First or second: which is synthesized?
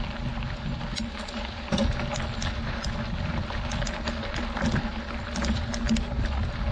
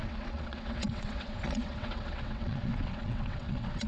second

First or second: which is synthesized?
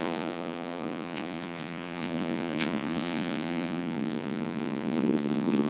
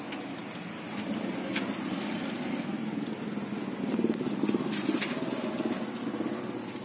first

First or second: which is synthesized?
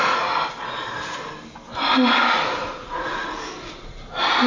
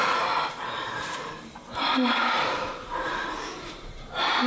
second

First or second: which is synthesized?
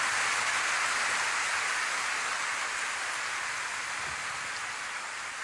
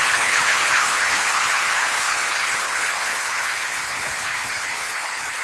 second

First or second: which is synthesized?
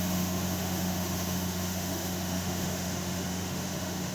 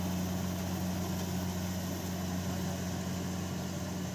first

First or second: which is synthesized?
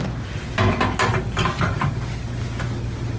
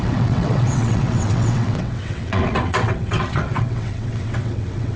second